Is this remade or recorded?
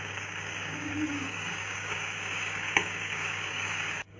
remade